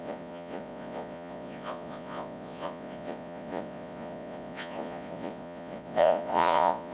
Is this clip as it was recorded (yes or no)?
no